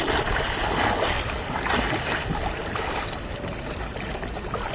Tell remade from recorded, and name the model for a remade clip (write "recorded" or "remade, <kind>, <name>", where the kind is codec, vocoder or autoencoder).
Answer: recorded